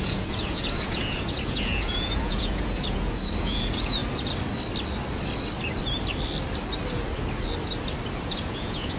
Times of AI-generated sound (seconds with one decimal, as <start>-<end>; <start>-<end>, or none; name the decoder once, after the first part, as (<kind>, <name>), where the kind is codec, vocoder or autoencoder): 0.0-4.0 (vocoder, Vocos); 8.2-9.0